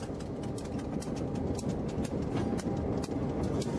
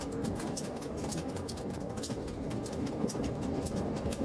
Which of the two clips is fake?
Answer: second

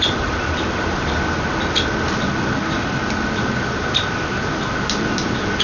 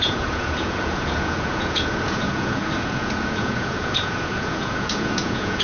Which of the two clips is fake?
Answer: second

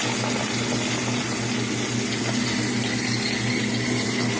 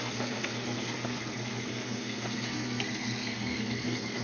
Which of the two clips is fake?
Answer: second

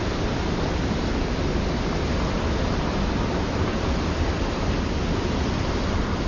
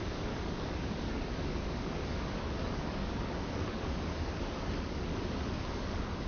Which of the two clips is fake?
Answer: second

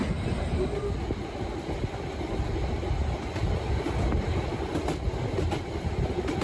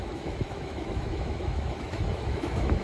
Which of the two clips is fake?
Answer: second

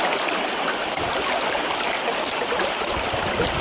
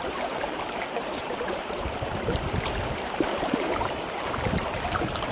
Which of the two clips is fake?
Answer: second